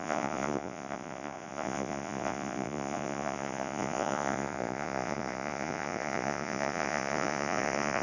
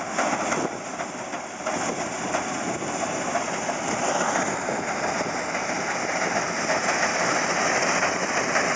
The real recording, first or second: second